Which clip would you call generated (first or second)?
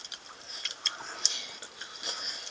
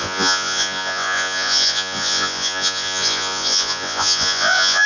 second